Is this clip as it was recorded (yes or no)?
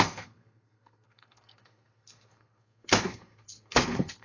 no